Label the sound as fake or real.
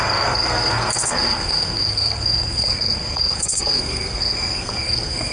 fake